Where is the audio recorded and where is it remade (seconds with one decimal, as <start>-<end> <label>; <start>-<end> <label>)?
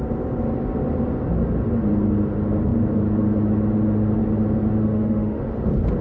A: 0.0-4.8 recorded; 4.8-5.4 remade; 5.4-6.0 recorded